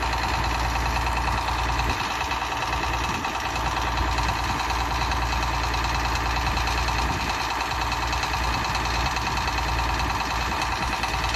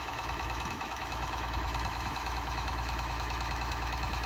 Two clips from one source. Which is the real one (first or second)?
first